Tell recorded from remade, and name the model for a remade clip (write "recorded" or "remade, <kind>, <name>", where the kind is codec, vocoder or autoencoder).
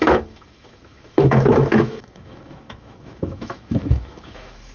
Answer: remade, autoencoder, DAC-VAE